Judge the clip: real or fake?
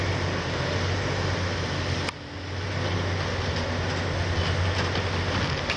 real